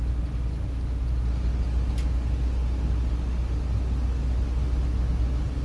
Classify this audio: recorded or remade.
recorded